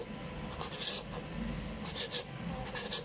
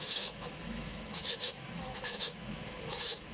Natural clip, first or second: first